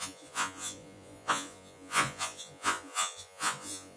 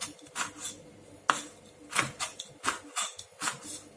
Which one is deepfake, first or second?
first